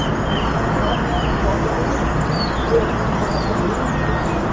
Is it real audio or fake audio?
real